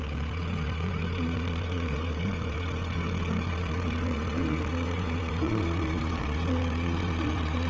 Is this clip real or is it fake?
fake